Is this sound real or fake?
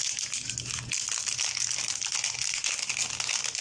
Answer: real